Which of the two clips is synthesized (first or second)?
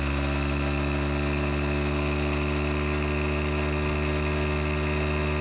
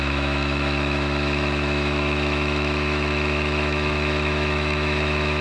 second